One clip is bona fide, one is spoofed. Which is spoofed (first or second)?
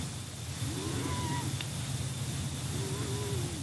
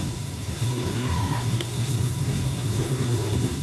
second